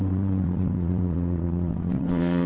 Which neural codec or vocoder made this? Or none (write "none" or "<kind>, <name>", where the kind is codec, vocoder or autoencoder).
vocoder, WaveNeXt